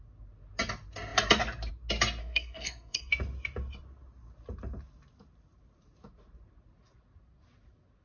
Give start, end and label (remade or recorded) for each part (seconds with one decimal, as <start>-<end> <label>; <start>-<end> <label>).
0.0-2.2 recorded; 2.2-3.1 remade; 3.1-8.0 recorded